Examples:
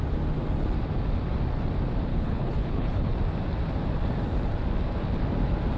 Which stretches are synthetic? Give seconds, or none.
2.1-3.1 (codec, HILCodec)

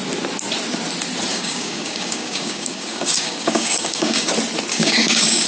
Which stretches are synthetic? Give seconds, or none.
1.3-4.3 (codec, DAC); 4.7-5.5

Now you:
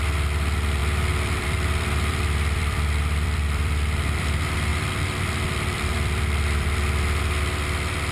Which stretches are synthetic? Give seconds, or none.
0.8-4.2 (vocoder, BigVGAN v2); 4.7-7.2

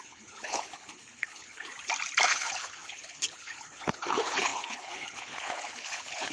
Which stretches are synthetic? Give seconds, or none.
0.0-1.7 (codec, HILCodec); 2.3-6.3

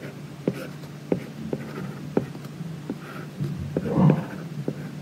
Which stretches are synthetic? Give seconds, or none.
none